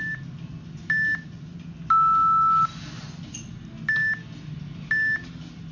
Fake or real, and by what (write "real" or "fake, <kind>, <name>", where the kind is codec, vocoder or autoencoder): real